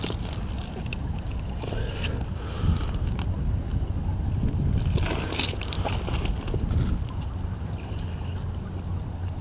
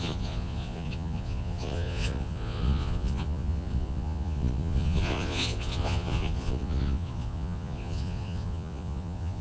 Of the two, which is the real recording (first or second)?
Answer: first